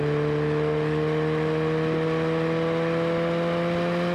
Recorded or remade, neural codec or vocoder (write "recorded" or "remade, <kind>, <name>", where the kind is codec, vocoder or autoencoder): recorded